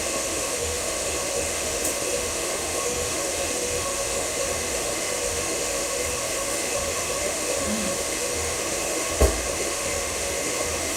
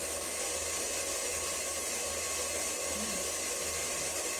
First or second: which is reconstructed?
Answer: first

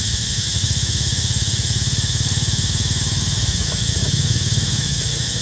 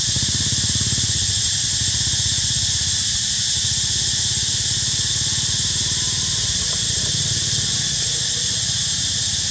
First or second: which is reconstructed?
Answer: first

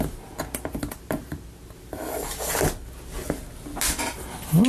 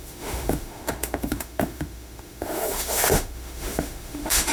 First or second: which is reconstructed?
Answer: second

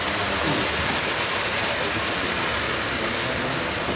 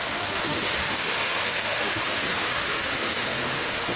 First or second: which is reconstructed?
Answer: second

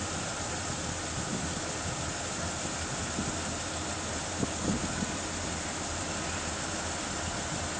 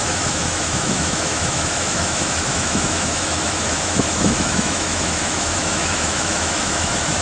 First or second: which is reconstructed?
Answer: second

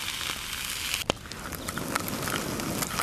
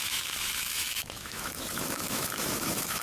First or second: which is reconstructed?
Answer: second